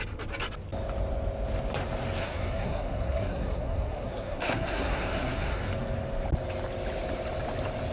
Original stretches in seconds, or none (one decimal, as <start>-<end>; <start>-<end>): 0.0-2.2; 5.7-7.9